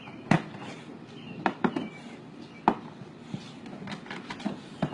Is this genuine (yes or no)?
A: no